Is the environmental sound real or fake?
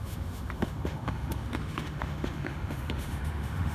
fake